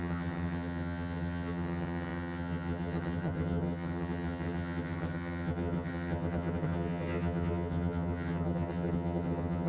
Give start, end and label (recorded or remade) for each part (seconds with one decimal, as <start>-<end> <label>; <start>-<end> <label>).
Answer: 0.0-9.7 remade

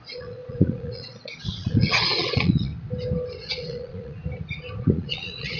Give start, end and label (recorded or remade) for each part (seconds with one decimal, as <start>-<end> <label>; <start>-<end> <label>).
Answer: 0.0-2.7 remade; 2.7-3.4 recorded; 3.4-4.2 remade; 4.2-4.8 recorded; 4.8-5.6 remade

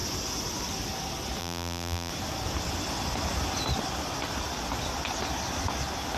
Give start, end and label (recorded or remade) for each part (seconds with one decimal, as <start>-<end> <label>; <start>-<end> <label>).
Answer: 0.0-1.4 recorded; 1.4-2.1 remade; 2.1-6.2 recorded

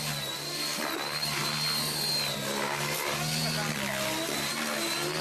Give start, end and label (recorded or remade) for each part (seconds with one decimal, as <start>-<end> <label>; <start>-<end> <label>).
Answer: 0.0-5.2 recorded

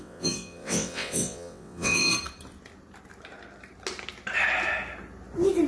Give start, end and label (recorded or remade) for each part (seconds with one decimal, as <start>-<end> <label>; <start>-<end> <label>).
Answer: 0.0-2.1 remade; 2.1-5.7 recorded

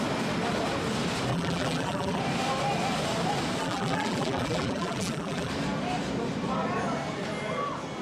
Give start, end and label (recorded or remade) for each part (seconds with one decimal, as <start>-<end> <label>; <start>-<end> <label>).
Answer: 0.0-1.3 recorded; 1.3-2.2 remade; 2.2-3.6 recorded; 3.6-5.5 remade; 5.5-8.0 recorded

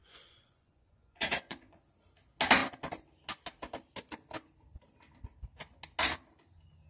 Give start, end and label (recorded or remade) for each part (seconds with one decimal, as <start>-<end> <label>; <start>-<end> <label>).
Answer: 0.0-1.8 remade; 1.8-6.9 recorded

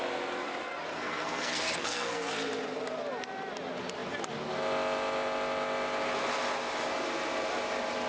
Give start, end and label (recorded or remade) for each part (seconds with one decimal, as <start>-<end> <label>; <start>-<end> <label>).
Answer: 0.0-0.9 recorded; 0.9-2.3 remade; 2.3-8.1 recorded